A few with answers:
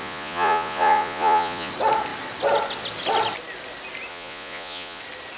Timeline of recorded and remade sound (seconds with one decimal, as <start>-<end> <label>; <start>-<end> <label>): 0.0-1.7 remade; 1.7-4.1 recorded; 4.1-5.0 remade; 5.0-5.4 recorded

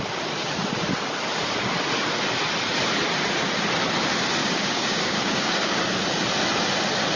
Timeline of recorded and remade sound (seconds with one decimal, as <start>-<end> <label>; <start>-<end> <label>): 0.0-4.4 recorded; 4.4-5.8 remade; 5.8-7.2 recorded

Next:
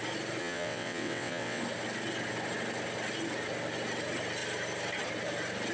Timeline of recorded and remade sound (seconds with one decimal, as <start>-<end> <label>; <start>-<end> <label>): 0.0-0.4 recorded; 0.4-1.6 remade; 1.6-5.7 recorded